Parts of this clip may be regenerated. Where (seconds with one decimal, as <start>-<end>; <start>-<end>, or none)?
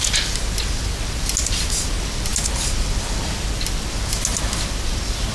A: none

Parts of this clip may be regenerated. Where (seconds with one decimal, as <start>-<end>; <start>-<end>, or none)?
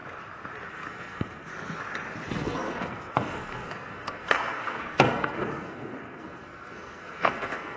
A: 0.7-1.5; 2.3-7.8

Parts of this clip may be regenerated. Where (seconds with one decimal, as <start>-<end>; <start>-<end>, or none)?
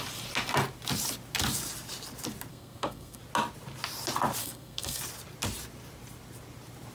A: 2.5-3.2; 4.4-5.0